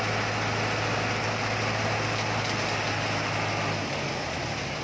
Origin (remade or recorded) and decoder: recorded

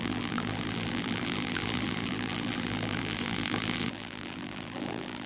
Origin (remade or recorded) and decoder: remade, vocoder, BigVGAN v2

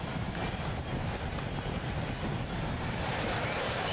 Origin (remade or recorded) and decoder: remade, vocoder, BigVGAN v2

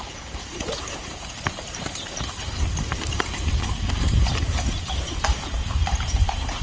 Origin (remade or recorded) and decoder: remade, vocoder, BigVGAN v2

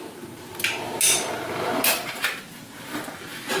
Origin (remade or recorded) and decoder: recorded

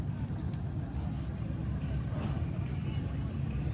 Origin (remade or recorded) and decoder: recorded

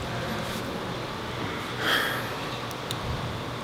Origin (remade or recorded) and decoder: recorded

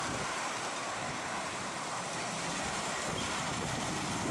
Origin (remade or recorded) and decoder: remade, vocoder, BigVGAN v2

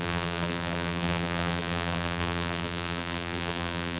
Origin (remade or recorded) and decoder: remade, vocoder, BigVGAN v2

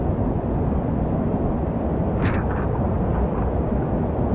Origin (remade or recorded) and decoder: recorded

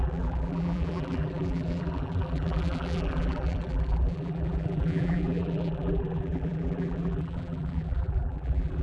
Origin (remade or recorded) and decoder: remade, vocoder, BigVGAN v2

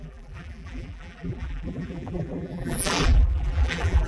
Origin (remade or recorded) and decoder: remade, vocoder, BigVGAN v2